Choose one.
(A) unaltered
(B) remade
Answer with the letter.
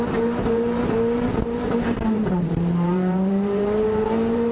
B